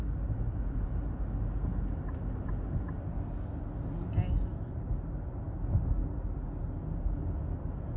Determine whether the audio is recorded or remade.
recorded